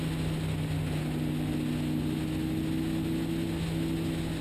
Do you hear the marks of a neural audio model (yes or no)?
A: no